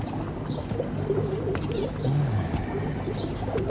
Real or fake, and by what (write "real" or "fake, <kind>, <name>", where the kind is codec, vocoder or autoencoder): real